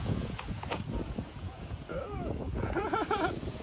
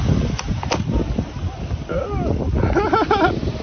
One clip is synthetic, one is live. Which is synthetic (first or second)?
first